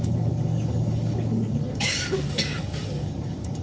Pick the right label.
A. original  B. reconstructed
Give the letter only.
B